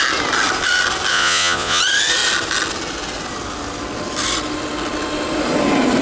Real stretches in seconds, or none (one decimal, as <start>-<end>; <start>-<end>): 0.0-1.1; 1.8-6.0